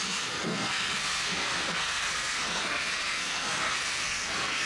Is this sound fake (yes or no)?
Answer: yes